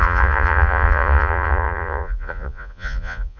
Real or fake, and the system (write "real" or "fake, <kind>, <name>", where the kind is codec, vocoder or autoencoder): fake, vocoder, Vocos